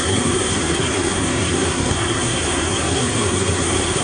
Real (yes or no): no